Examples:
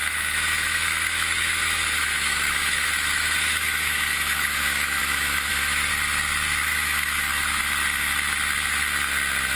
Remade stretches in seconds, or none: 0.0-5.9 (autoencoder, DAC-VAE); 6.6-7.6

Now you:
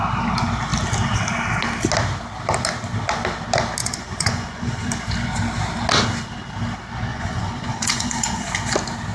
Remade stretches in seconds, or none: 3.8-4.9 (vocoder, Vocos); 7.1-8.4

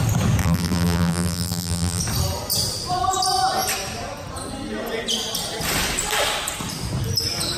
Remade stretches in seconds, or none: 0.4-2.0 (vocoder, BigVGAN v2)